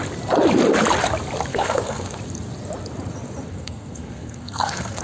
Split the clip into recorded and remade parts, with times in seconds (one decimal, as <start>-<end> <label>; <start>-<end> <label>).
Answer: 0.0-1.5 recorded; 1.5-2.2 remade; 2.2-3.5 recorded; 3.5-5.0 remade